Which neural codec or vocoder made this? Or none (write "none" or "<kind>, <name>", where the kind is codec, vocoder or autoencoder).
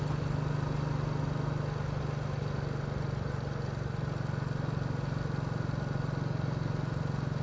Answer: none